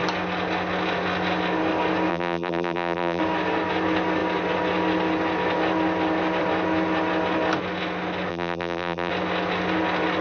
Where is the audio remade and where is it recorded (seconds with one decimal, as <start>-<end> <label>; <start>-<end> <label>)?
0.0-2.1 recorded; 2.1-3.2 remade; 3.2-8.3 recorded; 8.3-9.1 remade; 9.1-10.2 recorded